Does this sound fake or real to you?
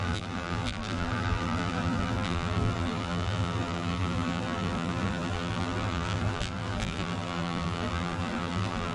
fake